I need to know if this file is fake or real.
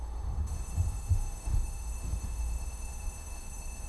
fake